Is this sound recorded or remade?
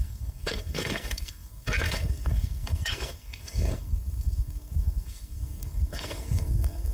remade